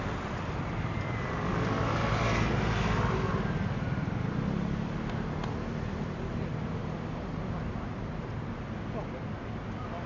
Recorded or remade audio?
recorded